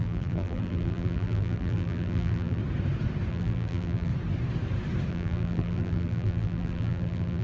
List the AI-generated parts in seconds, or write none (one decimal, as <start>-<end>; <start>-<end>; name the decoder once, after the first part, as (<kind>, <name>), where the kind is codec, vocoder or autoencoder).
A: 0.0-2.6 (vocoder, BigVGAN v2); 3.3-4.1; 5.1-7.4

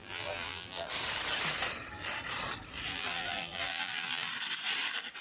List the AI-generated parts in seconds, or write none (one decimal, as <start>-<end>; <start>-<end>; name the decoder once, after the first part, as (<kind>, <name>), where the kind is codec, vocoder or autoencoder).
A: 0.0-0.9 (vocoder, BigVGAN v2); 2.9-4.3

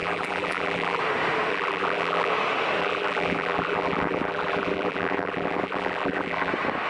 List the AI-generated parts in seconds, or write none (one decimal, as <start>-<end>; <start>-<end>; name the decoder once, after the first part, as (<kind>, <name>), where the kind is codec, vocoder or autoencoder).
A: 0.0-1.0 (vocoder, BigVGAN v2); 1.5-2.3; 2.8-6.5

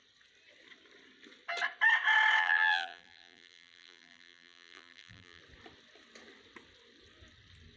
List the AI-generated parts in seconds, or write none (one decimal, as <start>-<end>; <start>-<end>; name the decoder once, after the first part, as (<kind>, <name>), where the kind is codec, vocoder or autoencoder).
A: 2.4-5.4 (vocoder, BigVGAN v2)

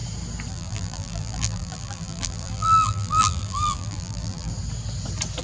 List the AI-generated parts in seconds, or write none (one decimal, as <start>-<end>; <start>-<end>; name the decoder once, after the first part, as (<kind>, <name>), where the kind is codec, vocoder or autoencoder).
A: 0.5-4.5 (vocoder, BigVGAN v2)

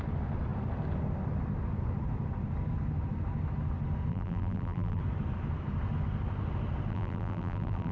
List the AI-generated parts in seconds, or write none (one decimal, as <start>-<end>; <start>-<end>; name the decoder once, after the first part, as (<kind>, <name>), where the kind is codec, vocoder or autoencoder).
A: 4.1-5.0 (vocoder, BigVGAN v2); 6.9-7.9

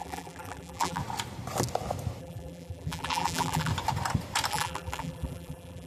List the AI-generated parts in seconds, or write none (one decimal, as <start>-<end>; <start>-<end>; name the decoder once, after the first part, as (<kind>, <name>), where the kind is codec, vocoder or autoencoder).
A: 0.0-1.0 (vocoder, BigVGAN v2); 2.2-3.7; 4.5-5.9

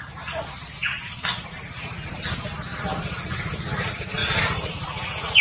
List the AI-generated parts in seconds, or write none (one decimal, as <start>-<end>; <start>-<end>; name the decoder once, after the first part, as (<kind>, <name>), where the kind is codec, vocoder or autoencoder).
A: 4.2-4.7 (vocoder, BigVGAN v2)